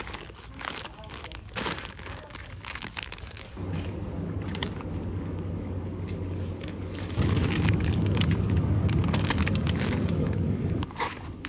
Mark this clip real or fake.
fake